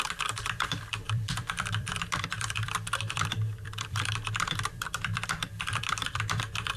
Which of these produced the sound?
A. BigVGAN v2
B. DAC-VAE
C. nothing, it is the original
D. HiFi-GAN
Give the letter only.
A